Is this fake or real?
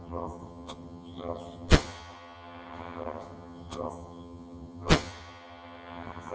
fake